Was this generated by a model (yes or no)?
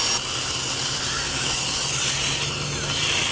no